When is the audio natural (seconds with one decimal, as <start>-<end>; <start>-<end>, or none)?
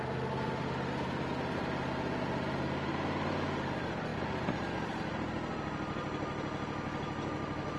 0.0-7.8